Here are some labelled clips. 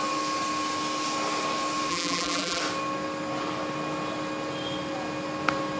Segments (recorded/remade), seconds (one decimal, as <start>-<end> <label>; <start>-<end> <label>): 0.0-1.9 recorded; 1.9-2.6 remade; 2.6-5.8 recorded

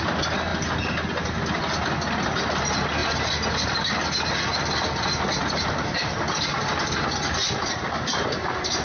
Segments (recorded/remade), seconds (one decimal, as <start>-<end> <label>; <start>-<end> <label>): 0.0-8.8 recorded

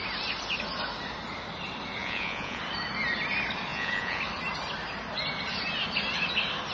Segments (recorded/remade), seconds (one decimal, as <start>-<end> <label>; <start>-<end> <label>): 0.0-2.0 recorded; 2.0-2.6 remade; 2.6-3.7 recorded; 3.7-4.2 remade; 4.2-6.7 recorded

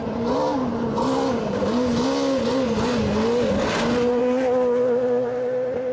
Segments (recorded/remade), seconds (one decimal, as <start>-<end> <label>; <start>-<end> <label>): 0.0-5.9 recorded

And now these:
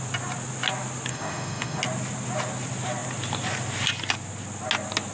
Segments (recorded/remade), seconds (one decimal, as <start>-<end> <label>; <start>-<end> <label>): 0.0-1.1 recorded; 1.1-1.8 remade; 1.8-5.1 recorded

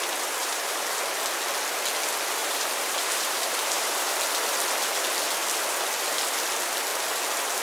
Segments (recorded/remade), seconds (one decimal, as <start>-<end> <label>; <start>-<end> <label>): 0.0-0.4 recorded; 0.4-1.0 remade; 1.0-2.4 recorded; 2.4-4.1 remade; 4.1-7.6 recorded